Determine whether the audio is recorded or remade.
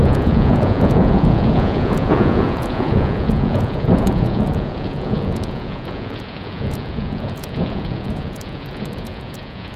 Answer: remade